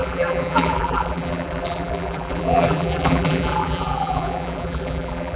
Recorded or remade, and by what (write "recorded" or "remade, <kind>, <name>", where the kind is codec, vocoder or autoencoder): remade, vocoder, BigVGAN v2